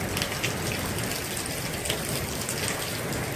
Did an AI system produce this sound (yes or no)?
no